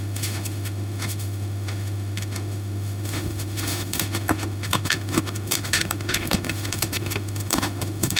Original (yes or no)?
no